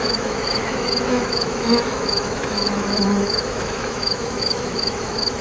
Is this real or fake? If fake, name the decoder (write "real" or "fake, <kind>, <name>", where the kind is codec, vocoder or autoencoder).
fake, autoencoder, DAC-VAE